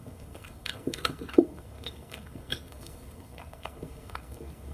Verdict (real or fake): fake